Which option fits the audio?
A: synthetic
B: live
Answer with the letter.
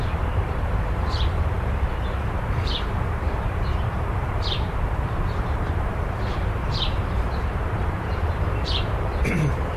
A